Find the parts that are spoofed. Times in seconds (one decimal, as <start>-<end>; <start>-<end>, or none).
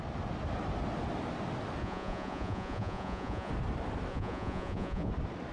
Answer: 1.8-3.5; 4.1-5.1